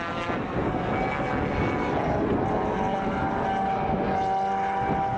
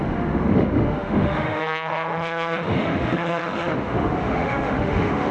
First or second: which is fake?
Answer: second